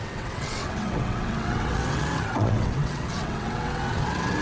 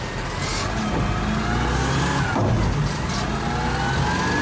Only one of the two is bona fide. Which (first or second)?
second